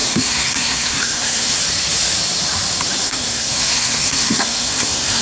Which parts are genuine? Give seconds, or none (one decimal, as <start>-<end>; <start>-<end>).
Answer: 1.6-3.0